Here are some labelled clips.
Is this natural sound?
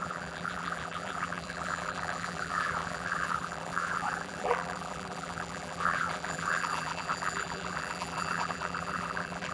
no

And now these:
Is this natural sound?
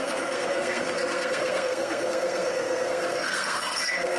no